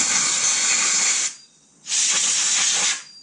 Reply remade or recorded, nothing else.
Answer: recorded